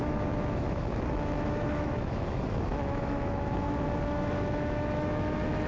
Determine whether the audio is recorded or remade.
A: remade